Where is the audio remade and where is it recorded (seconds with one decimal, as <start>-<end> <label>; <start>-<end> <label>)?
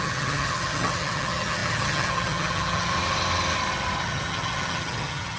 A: 0.0-2.9 remade; 2.9-4.0 recorded; 4.0-5.4 remade